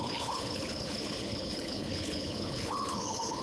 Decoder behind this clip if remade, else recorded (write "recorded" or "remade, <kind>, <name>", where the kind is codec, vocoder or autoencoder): remade, codec, HILCodec